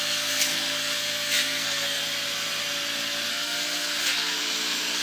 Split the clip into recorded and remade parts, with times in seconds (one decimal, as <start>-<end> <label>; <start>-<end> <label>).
0.0-2.0 remade; 2.0-3.3 recorded; 3.3-5.0 remade